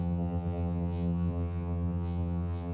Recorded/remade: remade